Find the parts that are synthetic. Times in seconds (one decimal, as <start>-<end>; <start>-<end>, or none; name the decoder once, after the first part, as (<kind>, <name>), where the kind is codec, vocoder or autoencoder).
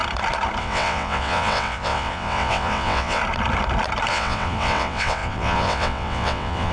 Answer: 0.6-3.2 (vocoder, WaveNeXt); 4.1-6.7